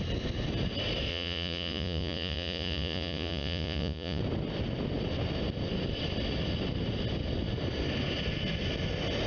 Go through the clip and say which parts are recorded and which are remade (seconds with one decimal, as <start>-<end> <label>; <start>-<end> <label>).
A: 0.0-1.1 recorded; 1.1-4.2 remade; 4.2-9.3 recorded